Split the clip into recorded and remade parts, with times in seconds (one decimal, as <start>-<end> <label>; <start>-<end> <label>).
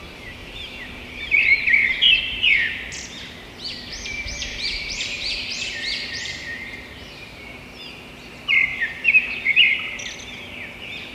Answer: 0.0-0.4 recorded; 0.4-3.0 remade; 3.0-3.9 recorded; 3.9-7.7 remade; 7.7-8.7 recorded; 8.7-10.1 remade; 10.1-11.1 recorded